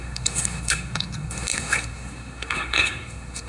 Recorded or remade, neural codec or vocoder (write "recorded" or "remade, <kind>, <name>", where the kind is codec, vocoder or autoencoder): remade, codec, SNAC